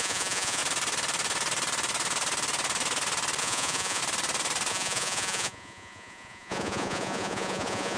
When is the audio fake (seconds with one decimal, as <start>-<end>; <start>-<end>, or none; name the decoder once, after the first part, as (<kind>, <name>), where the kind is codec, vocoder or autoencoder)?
0.0-0.6 (vocoder, Vocos); 3.4-4.0; 4.7-8.0